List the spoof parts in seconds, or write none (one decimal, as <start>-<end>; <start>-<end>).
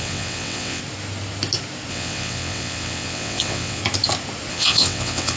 0.0-0.8; 1.9-3.8; 4.5-5.4